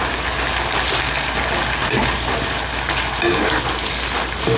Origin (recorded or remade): recorded